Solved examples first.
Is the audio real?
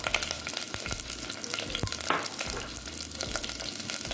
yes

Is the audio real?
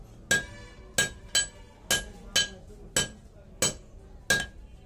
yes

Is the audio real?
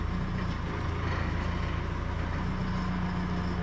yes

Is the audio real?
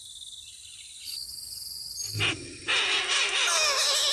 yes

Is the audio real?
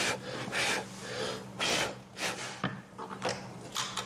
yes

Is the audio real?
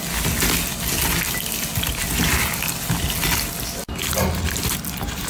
yes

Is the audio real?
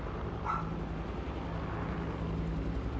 yes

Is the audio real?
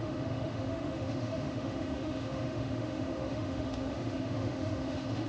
no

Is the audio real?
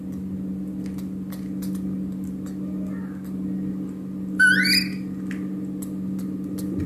yes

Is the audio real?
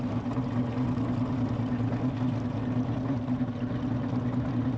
yes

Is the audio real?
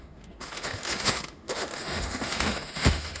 no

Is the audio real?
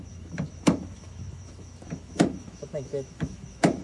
no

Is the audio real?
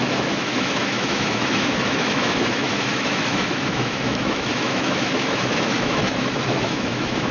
no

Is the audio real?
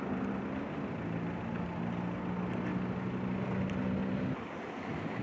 yes